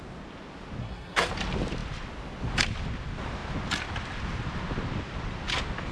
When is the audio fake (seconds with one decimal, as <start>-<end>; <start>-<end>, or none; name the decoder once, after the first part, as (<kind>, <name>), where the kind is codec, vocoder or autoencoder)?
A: 0.8-1.3 (codec, SNAC)